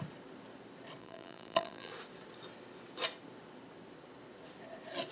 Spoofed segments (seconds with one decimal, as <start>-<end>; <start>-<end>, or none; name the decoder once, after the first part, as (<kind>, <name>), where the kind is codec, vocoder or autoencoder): 1.0-1.9 (vocoder, BigVGAN v2)